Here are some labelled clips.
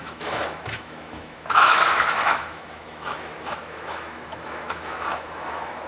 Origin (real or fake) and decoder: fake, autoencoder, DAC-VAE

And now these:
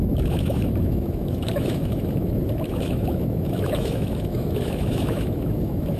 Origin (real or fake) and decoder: fake, autoencoder, DAC-VAE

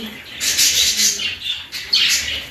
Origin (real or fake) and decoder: real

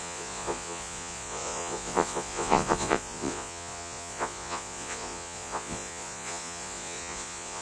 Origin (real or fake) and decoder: fake, vocoder, Vocos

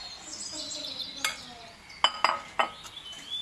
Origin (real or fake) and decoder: real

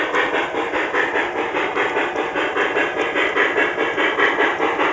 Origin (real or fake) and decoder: real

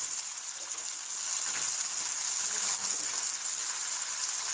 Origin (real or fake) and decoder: real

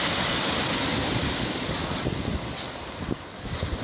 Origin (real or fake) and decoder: real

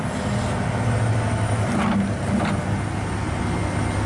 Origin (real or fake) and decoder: real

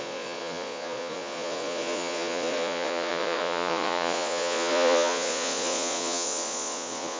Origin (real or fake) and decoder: fake, vocoder, Vocos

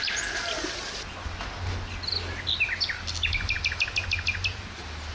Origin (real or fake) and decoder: real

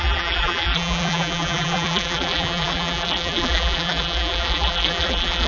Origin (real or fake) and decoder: fake, vocoder, BigVGAN v2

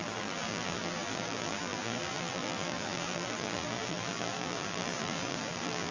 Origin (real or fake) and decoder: fake, vocoder, BigVGAN v2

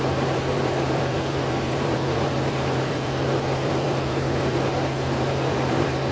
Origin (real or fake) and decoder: fake, vocoder, BigVGAN v2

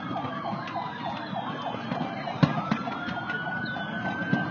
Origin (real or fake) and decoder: fake, vocoder, BigVGAN v2